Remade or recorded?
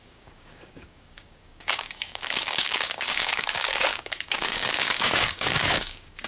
remade